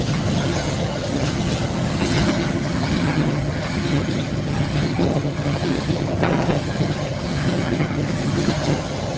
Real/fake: fake